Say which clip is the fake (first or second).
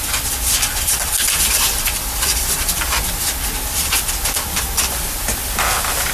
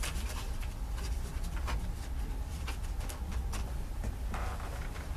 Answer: first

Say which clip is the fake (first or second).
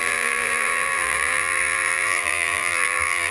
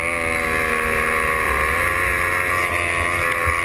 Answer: first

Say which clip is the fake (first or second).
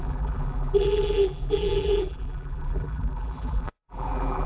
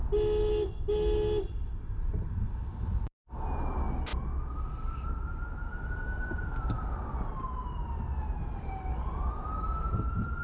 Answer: first